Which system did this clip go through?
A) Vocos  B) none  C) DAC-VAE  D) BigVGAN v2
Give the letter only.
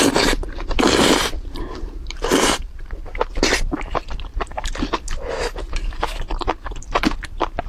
D